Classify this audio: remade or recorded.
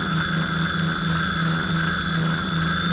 recorded